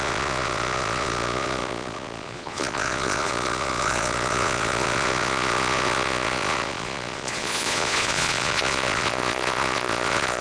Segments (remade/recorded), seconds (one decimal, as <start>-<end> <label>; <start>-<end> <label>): 0.0-10.4 remade